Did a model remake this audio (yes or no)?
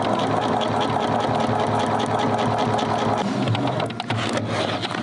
no